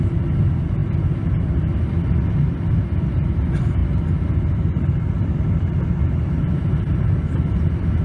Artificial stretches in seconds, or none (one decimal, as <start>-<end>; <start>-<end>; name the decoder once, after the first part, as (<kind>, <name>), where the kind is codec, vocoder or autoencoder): none